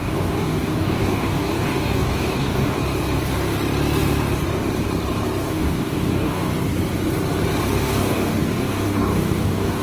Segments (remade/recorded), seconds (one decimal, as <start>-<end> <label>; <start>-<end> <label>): 0.0-2.8 remade; 2.8-5.4 recorded; 5.4-6.5 remade; 6.5-7.8 recorded; 7.8-9.8 remade